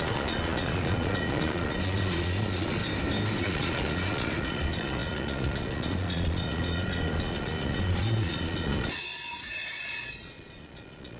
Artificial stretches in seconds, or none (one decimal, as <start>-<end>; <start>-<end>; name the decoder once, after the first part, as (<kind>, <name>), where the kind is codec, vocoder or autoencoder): 0.0-2.8 (vocoder, Vocos); 3.4-11.2